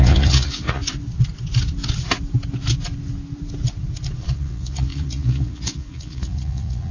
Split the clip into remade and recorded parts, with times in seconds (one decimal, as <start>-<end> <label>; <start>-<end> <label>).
0.0-0.8 remade; 0.8-4.2 recorded; 4.2-6.9 remade